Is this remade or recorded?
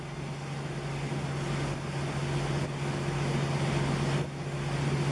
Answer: recorded